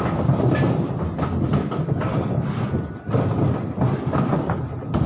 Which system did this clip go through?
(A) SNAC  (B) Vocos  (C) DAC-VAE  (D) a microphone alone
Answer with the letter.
D